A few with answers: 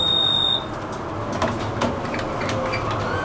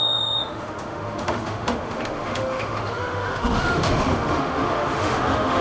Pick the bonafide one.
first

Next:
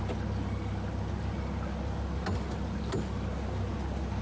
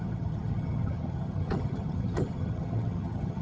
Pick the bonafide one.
first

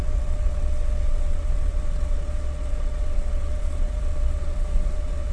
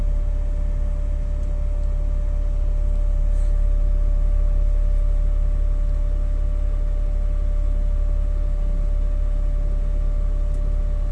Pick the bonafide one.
second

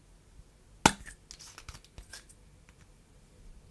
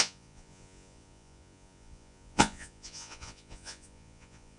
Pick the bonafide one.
first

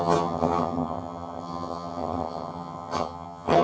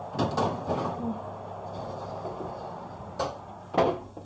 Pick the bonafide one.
second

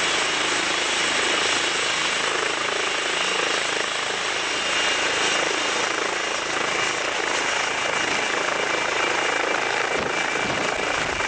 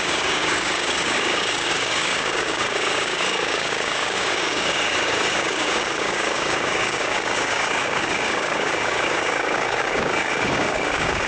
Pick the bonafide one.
first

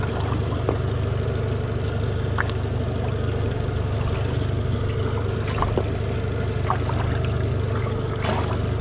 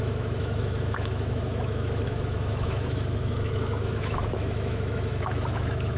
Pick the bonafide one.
first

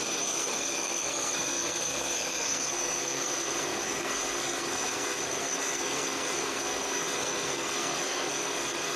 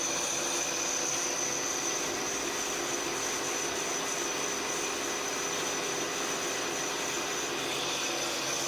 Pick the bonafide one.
second